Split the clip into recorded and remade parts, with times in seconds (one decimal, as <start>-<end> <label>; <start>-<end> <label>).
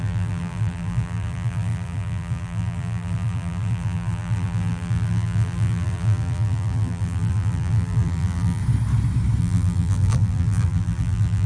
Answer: 0.0-8.6 remade; 8.6-9.4 recorded; 9.4-11.5 remade